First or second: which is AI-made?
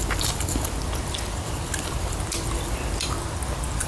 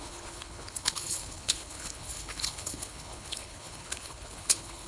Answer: second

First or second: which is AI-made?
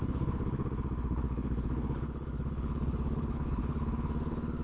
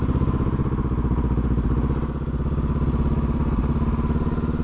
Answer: first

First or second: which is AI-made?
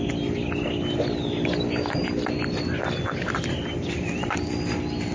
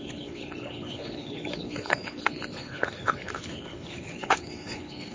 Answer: second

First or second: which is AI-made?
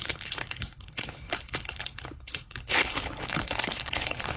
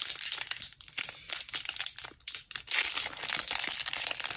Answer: first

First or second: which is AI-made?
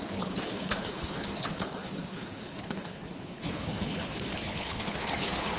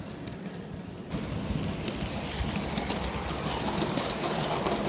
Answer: first